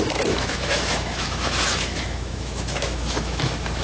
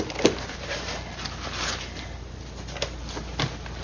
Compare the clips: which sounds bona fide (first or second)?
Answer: second